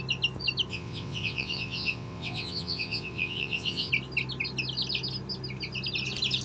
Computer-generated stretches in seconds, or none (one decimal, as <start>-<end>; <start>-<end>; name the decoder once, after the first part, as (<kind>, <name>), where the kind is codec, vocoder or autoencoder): 0.7-3.9 (vocoder, WaveNeXt)